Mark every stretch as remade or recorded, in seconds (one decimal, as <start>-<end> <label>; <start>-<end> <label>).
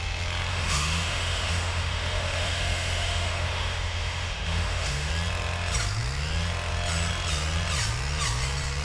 0.0-0.5 recorded; 0.5-5.1 remade; 5.1-8.8 recorded